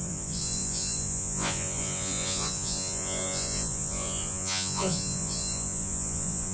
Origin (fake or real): fake